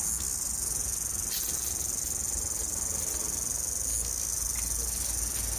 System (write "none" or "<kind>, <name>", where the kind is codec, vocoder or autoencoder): none